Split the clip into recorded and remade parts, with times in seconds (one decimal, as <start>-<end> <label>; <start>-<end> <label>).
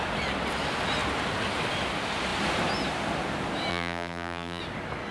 0.0-3.7 recorded; 3.7-4.6 remade; 4.6-5.1 recorded